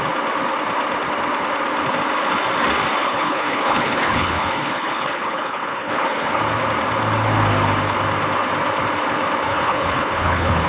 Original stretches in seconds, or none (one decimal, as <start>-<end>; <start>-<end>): 0.0-3.0; 6.4-9.5